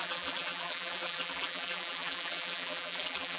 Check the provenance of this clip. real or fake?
fake